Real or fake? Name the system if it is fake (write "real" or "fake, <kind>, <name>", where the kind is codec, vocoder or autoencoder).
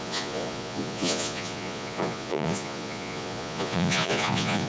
fake, vocoder, Vocos